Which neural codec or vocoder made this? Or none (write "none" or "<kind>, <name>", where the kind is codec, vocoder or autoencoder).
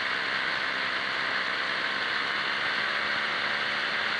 none